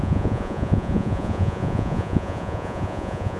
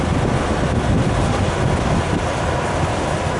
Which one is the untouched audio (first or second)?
second